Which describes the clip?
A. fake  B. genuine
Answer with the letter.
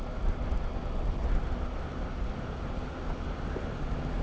B